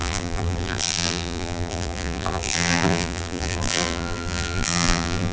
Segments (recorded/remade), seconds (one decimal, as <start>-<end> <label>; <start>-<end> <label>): 0.0-5.3 remade